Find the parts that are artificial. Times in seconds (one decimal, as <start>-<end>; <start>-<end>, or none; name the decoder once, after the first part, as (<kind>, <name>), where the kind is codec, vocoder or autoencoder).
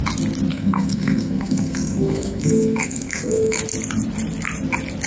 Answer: 0.5-3.6 (codec, SNAC)